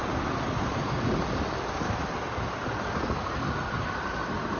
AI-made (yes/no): no